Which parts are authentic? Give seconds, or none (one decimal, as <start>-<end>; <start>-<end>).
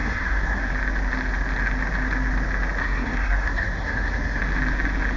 0.7-2.8; 4.4-5.2